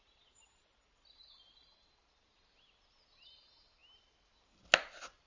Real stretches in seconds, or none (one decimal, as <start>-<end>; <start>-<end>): 0.0-5.3